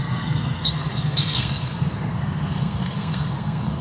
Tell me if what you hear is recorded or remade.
remade